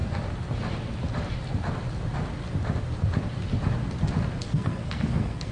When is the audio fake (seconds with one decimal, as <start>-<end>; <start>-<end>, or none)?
4.4-5.5